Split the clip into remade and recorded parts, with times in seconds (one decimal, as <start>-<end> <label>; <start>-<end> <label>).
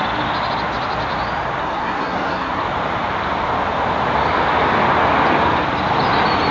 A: 0.0-1.6 recorded; 1.6-2.6 remade; 2.6-6.5 recorded